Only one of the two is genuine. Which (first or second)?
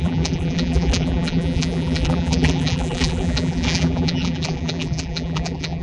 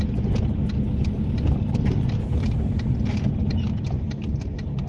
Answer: second